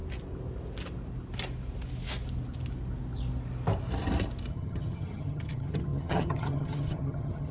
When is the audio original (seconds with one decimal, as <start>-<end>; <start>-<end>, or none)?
0.0-4.5